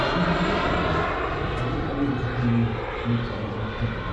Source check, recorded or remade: recorded